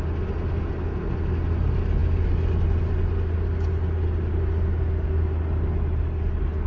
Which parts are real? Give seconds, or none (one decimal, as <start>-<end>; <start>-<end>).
0.0-6.7